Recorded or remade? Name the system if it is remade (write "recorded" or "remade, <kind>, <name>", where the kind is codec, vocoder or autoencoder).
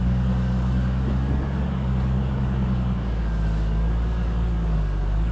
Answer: remade, codec, DAC